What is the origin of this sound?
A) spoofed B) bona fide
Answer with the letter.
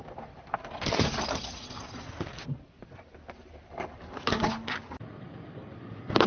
B